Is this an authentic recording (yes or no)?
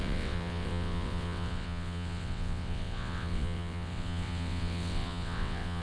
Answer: no